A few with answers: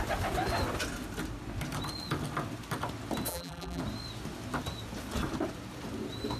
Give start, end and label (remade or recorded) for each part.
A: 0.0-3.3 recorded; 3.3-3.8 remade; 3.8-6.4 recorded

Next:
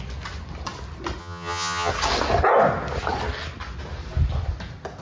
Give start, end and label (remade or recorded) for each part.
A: 0.0-1.2 recorded; 1.2-1.9 remade; 1.9-5.0 recorded

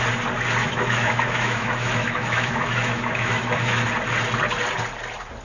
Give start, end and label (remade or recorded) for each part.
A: 0.0-0.6 recorded; 0.6-3.8 remade; 3.8-5.4 recorded

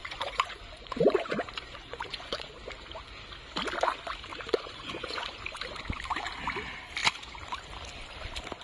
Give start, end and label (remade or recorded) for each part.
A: 0.0-2.5 remade; 2.5-4.3 recorded; 4.3-5.4 remade; 5.4-8.6 recorded

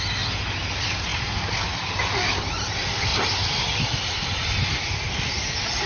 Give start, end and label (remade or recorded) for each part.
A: 0.0-3.1 recorded; 3.1-4.1 remade; 4.1-5.9 recorded